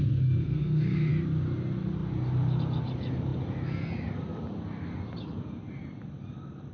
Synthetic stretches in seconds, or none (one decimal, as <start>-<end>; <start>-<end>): 0.4-1.1